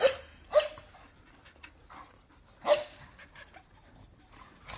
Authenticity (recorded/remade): recorded